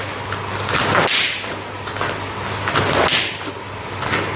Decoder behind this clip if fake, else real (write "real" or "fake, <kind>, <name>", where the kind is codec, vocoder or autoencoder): real